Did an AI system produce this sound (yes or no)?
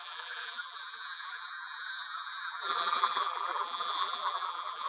yes